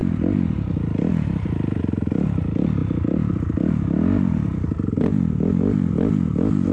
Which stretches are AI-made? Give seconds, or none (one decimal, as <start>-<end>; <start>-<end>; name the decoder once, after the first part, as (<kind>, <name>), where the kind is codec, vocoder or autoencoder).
0.0-6.7 (vocoder, BigVGAN v2)